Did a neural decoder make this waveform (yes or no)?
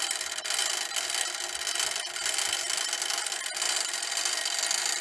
no